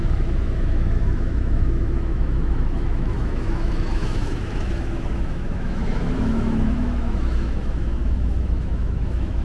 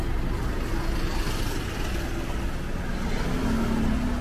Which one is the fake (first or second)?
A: first